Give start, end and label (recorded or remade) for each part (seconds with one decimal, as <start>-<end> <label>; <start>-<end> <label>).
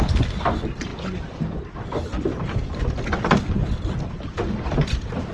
0.0-0.9 remade; 0.9-4.1 recorded; 4.1-5.3 remade